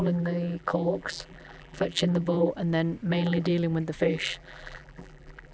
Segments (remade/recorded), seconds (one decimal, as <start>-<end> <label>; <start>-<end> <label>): 0.0-2.5 remade; 2.5-3.1 recorded; 3.1-3.5 remade; 3.5-4.0 recorded; 4.0-5.5 remade